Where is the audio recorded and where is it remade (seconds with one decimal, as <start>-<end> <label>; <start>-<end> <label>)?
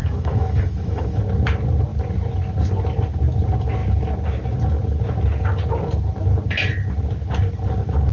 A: 0.0-1.2 remade; 1.2-8.1 recorded